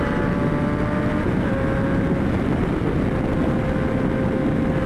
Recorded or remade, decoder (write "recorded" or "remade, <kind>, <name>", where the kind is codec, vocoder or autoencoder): recorded